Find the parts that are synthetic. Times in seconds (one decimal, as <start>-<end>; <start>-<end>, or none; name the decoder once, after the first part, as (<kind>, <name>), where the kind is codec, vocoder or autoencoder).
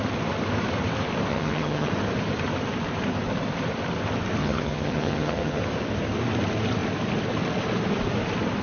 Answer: 1.3-1.9 (vocoder, HiFi-GAN); 4.4-5.6